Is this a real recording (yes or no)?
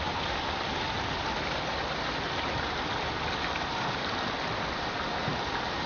yes